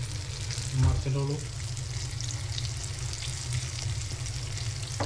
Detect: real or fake real